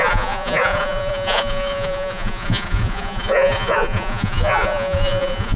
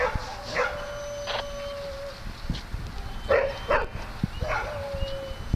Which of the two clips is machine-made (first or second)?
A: first